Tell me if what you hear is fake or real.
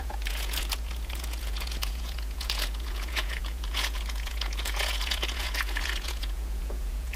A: fake